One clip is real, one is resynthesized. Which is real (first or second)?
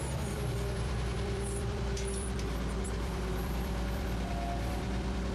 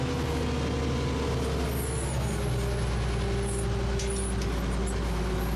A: second